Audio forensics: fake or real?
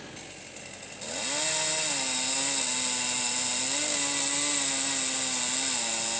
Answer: real